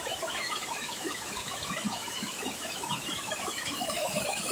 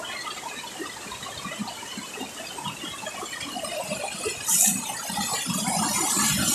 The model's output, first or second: first